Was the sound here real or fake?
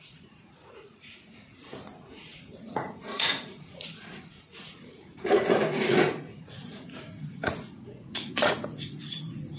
fake